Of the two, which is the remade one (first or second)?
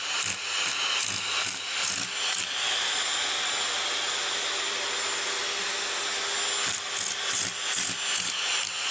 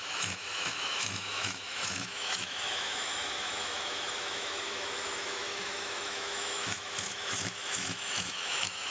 second